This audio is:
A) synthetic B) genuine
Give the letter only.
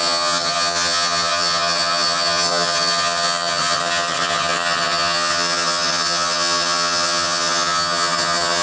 A